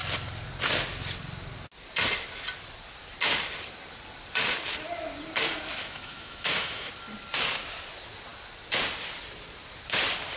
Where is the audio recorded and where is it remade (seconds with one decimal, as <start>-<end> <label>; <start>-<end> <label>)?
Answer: 0.0-5.8 recorded; 5.8-6.9 remade; 6.9-10.4 recorded